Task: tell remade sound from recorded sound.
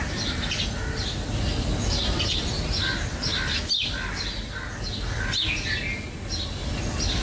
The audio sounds recorded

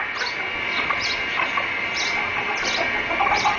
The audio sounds recorded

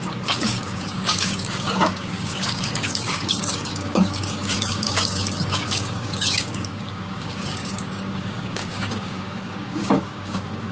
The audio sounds remade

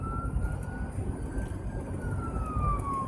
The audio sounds recorded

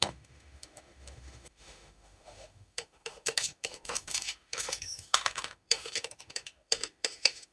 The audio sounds remade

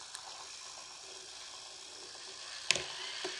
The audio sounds recorded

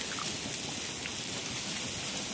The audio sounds recorded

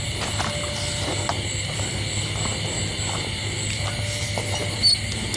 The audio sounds recorded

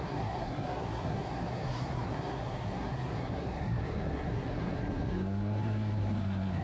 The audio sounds remade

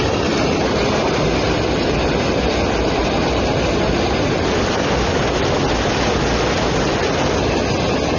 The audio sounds recorded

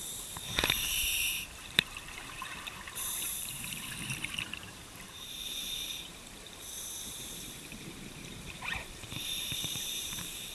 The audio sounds remade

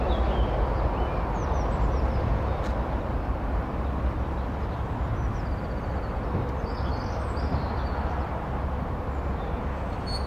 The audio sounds recorded